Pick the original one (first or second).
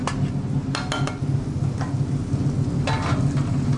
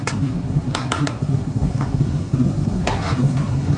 first